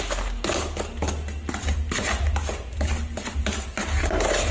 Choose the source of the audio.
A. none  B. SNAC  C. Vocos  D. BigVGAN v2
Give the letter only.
A